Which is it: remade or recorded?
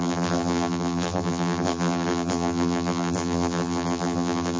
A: remade